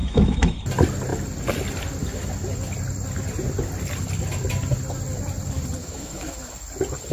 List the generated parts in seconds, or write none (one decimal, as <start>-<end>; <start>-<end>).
0.0-0.6; 5.8-6.5